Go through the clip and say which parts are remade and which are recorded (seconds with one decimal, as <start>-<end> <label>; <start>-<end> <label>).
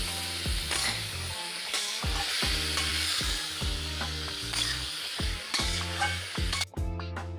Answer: 0.0-0.8 recorded; 0.8-2.0 remade; 2.0-2.9 recorded; 2.9-7.4 remade